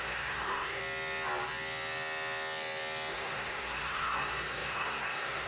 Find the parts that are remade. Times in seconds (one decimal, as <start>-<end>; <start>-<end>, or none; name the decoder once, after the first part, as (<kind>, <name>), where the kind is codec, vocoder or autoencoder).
0.0-0.8 (codec, SNAC); 3.1-5.5